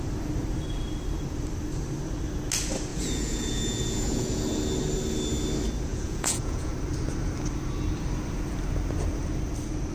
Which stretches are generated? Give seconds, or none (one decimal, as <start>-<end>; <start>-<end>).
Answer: 2.9-4.4; 5.9-6.7